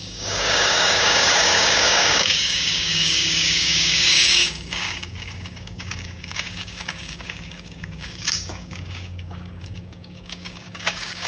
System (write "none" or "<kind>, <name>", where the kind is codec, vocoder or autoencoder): codec, DAC